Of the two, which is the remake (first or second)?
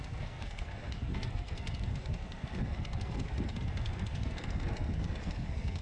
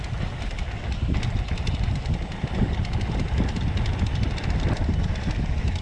first